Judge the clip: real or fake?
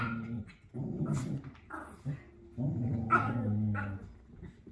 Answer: real